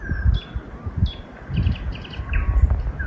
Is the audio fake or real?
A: real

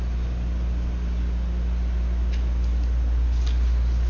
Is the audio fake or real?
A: real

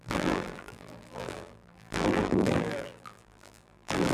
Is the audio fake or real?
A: fake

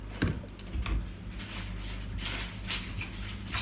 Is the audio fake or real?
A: real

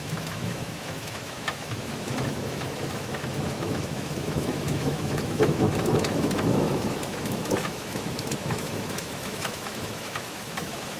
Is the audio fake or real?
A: fake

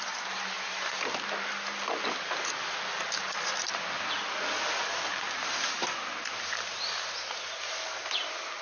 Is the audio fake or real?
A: real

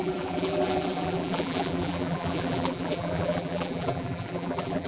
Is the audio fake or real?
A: fake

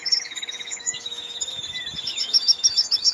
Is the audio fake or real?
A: fake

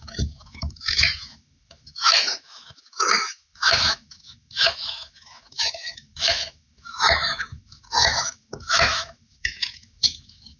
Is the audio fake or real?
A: fake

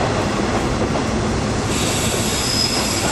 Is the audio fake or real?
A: real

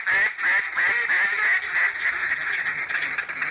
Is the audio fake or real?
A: real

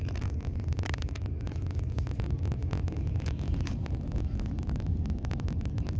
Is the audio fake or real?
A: fake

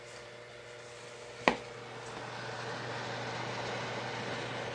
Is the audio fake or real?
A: real